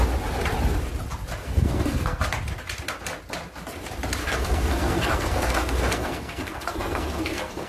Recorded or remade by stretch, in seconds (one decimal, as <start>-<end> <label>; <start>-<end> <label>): 0.0-1.4 recorded; 1.4-2.2 remade; 2.2-4.2 recorded; 4.2-7.7 remade